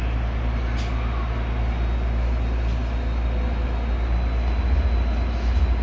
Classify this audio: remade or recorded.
recorded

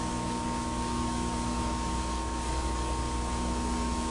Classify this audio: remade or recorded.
remade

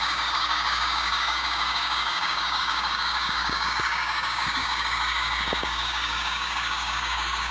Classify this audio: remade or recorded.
remade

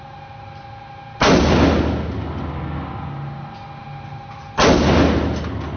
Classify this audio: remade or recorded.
recorded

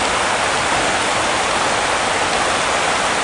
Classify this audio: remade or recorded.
recorded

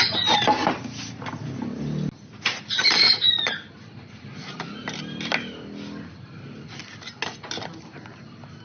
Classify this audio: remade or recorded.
recorded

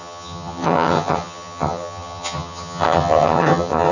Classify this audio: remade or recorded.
remade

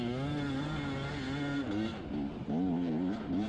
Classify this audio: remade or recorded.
recorded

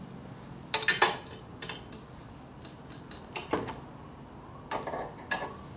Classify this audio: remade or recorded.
recorded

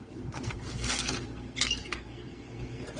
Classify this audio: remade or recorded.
remade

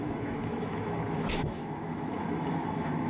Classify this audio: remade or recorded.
remade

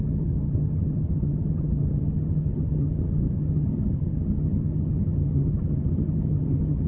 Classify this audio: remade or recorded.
remade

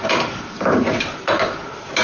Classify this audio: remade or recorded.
recorded